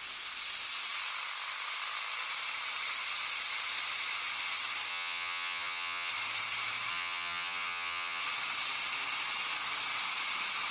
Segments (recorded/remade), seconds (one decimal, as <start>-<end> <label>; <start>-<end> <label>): 0.0-4.9 recorded; 4.9-6.1 remade; 6.1-6.9 recorded; 6.9-8.2 remade; 8.2-10.7 recorded